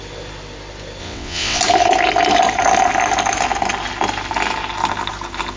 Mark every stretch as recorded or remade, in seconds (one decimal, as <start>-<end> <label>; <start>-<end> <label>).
0.0-1.0 recorded; 1.0-1.6 remade; 1.6-5.6 recorded